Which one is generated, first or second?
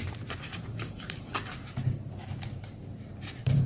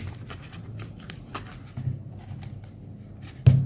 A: first